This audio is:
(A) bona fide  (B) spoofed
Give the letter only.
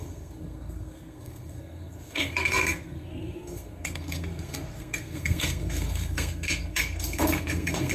B